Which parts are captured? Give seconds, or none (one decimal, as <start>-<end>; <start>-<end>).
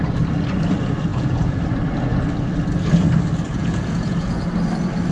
0.0-1.1; 1.6-3.5; 4.5-5.1